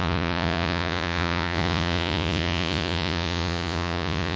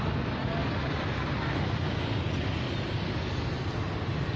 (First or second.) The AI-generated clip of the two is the first